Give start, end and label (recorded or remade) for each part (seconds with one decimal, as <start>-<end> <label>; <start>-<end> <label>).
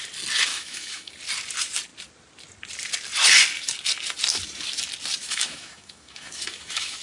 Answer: 0.0-0.5 recorded; 0.5-1.1 remade; 1.1-5.2 recorded; 5.2-7.0 remade